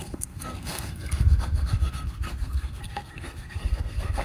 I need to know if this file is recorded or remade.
remade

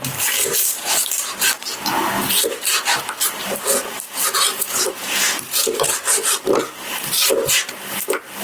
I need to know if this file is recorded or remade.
remade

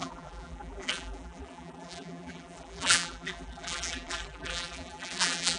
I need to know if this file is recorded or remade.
remade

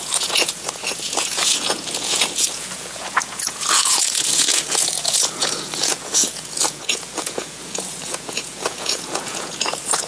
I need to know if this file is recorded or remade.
remade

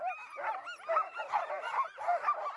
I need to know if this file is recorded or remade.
recorded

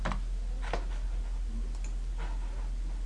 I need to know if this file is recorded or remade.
recorded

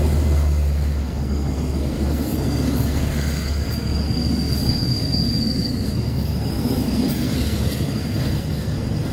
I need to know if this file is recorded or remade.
remade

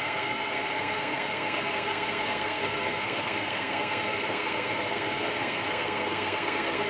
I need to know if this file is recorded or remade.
remade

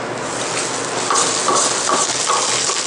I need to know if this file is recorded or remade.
recorded